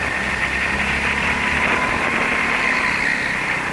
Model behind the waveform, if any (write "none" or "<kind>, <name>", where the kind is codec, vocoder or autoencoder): vocoder, BigVGAN v2